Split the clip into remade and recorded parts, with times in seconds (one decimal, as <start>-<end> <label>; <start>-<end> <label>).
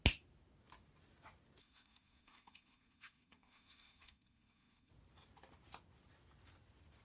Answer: 0.0-1.6 recorded; 1.6-4.9 remade; 4.9-7.0 recorded